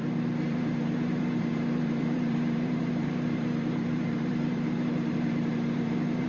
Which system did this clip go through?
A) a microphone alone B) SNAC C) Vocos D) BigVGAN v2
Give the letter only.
D